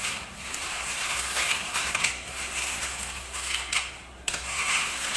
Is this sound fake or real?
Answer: fake